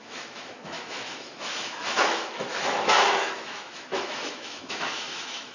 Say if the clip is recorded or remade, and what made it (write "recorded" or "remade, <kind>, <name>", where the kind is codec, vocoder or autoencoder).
remade, autoencoder, DAC-VAE